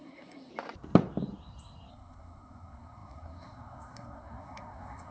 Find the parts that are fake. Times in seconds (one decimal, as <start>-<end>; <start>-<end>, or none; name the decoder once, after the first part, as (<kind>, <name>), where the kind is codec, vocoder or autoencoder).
0.0-0.5 (codec, SNAC); 1.9-5.1

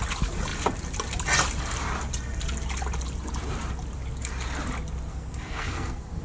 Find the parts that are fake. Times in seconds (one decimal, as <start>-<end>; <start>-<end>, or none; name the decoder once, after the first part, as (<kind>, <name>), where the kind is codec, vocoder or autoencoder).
5.1-6.2 (codec, SNAC)

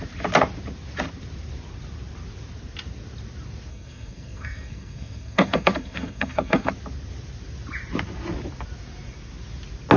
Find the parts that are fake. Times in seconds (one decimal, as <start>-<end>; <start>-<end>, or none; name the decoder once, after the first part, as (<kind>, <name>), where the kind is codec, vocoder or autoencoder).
3.7-6.7 (codec, SNAC)

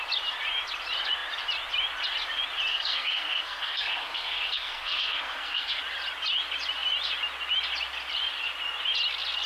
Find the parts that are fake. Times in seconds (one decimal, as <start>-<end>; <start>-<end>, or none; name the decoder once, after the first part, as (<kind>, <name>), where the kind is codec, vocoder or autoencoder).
2.7-5.8 (codec, SNAC)

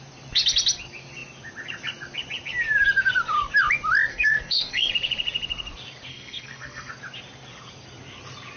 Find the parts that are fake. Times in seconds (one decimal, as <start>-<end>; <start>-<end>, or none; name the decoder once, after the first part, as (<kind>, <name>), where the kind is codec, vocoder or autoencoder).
4.1-4.9 (codec, SNAC); 6.1-6.9

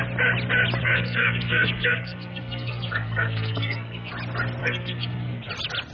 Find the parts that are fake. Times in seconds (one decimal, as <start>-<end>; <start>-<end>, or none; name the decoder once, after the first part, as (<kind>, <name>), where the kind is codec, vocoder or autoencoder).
0.8-4.1 (codec, SNAC); 4.6-5.5